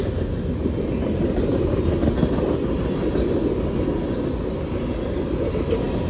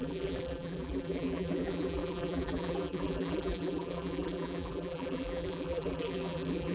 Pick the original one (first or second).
first